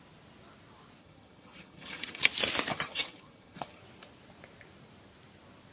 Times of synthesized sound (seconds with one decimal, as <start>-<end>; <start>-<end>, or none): 1.0-2.2; 2.7-3.8